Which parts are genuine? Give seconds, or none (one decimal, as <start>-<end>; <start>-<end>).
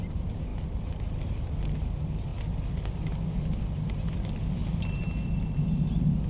0.0-6.3